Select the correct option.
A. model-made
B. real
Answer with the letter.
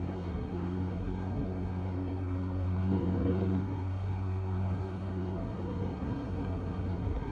A